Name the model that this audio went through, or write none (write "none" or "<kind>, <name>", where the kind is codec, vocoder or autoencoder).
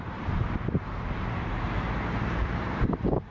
vocoder, BigVGAN v2